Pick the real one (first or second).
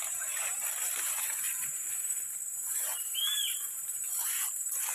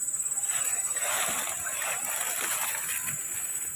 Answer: second